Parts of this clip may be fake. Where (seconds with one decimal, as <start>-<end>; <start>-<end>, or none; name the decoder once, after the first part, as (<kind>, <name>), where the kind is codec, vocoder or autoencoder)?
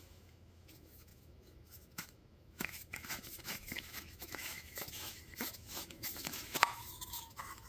0.0-7.7 (autoencoder, DAC-VAE)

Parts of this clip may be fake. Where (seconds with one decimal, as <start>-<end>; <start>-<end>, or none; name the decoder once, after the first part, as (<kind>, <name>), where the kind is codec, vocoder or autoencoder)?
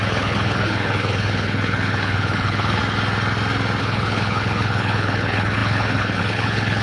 0.0-2.8 (codec, HILCodec); 3.8-6.8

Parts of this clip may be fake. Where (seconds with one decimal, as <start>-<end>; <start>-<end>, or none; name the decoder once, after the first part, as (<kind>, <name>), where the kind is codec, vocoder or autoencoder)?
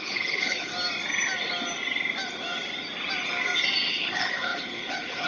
0.0-0.7 (codec, HILCodec); 3.9-5.3